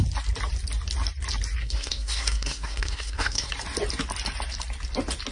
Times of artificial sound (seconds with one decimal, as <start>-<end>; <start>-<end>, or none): 1.6-3.5